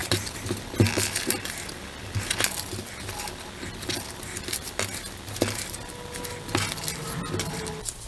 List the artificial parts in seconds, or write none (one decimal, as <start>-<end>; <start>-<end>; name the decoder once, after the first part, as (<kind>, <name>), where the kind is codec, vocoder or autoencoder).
none